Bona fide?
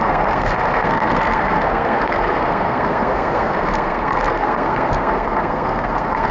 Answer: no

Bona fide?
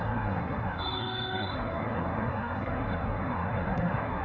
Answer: no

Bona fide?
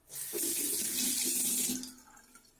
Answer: yes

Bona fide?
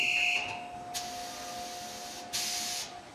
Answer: yes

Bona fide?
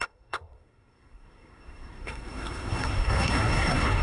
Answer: no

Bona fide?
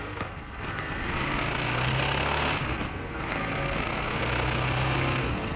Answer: no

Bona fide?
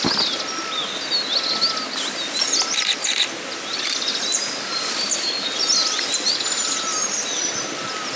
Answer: yes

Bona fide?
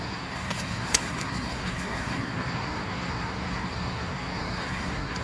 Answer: no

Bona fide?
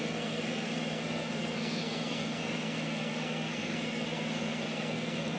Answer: no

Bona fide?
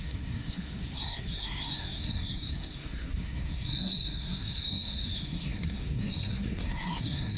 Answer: no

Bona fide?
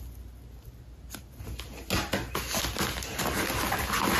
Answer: yes